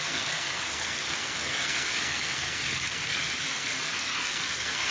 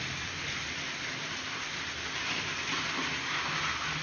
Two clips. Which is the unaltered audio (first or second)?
second